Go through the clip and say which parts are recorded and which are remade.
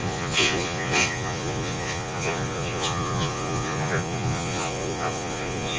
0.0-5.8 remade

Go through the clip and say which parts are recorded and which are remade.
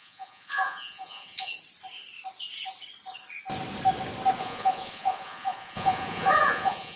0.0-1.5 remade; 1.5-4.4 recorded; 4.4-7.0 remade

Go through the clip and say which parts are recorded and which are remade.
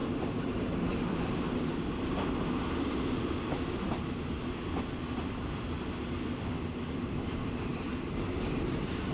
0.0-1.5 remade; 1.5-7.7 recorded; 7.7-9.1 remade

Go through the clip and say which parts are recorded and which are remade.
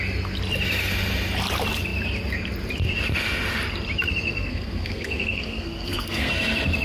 0.0-4.3 recorded; 4.3-6.3 remade; 6.3-6.8 recorded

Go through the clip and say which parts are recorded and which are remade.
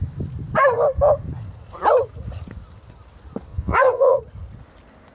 0.0-3.5 recorded; 3.5-4.2 remade; 4.2-5.1 recorded